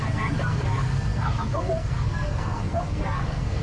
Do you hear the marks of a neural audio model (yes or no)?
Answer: yes